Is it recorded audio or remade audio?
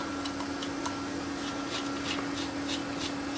recorded